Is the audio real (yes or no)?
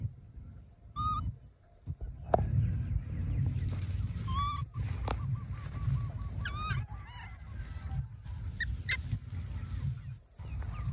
yes